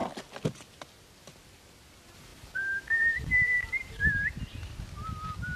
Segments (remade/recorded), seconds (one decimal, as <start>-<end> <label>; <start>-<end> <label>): 0.0-2.3 recorded; 2.3-4.8 remade; 4.8-5.6 recorded